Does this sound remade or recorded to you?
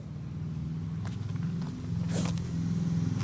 recorded